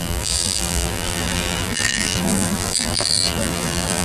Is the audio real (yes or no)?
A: no